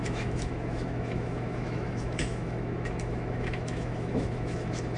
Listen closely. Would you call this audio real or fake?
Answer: fake